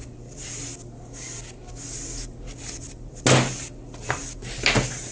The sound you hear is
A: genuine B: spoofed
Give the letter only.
A